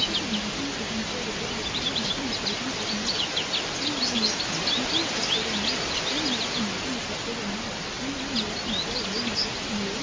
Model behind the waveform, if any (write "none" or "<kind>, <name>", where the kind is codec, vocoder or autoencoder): none